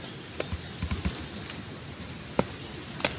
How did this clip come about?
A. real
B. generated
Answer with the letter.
A